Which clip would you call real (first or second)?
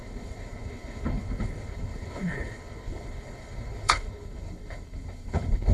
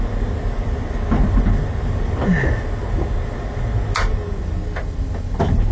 second